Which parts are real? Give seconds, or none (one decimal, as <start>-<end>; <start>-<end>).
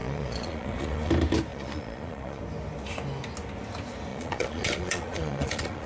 1.1-1.5; 2.4-4.1